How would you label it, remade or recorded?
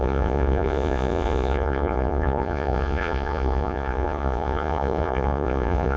remade